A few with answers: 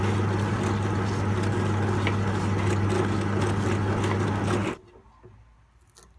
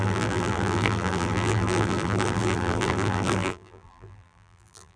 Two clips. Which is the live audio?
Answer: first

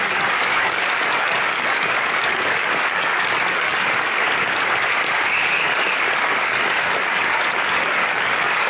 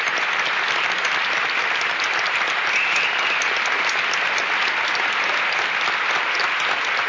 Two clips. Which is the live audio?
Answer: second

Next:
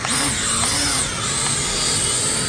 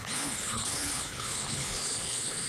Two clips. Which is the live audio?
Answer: first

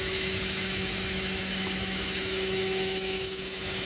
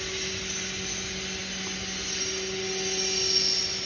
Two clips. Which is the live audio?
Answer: second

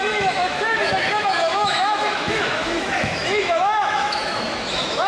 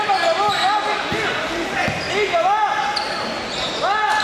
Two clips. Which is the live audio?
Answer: second